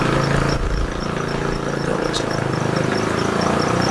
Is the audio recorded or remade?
recorded